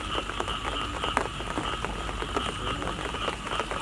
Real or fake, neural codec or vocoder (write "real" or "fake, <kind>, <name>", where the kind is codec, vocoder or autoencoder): real